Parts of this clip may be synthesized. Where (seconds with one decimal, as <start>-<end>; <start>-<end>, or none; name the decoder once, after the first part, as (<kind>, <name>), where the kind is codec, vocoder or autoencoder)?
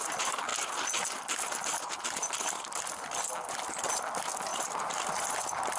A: none